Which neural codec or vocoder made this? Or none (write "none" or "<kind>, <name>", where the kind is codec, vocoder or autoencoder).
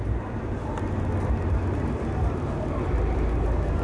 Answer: none